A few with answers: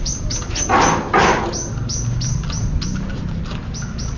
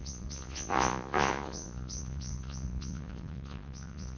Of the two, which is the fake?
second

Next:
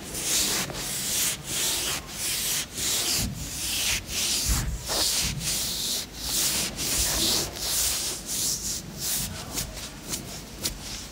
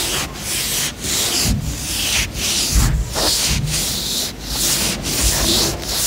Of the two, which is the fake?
first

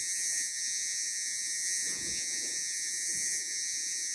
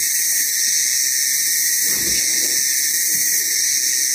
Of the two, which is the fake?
first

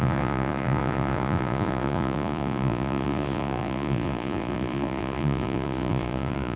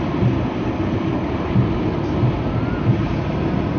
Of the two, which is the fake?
first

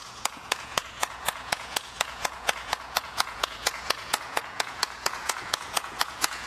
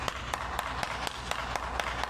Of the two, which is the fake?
first